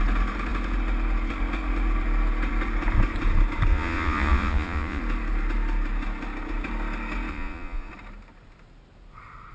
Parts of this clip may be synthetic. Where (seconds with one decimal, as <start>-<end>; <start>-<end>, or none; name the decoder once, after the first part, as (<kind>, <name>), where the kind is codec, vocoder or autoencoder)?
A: 3.7-5.0 (vocoder, Vocos); 7.3-7.9

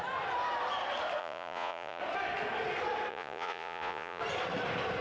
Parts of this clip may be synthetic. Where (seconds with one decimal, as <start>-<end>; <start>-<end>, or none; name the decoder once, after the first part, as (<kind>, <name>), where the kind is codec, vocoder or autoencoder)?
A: 1.2-2.0 (vocoder, Vocos); 3.1-4.2